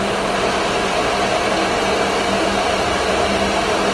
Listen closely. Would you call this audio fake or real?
real